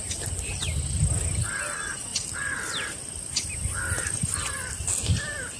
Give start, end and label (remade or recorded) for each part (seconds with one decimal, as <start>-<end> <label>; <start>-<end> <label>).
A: 0.0-2.1 recorded; 2.1-4.2 remade; 4.2-5.6 recorded